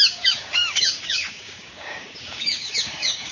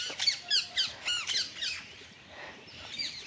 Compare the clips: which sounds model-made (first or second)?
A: first